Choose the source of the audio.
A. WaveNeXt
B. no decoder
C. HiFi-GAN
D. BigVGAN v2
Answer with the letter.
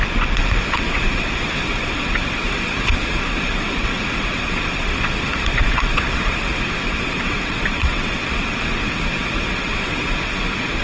A